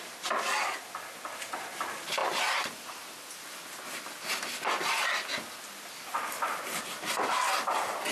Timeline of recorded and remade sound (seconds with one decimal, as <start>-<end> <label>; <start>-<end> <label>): 0.0-2.2 recorded; 2.2-2.7 remade; 2.7-8.1 recorded